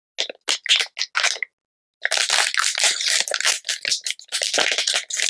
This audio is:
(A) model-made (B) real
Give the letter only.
B